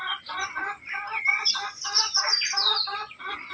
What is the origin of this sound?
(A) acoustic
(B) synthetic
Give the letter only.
A